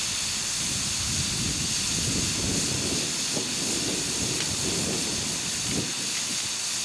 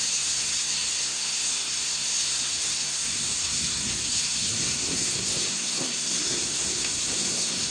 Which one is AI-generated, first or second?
second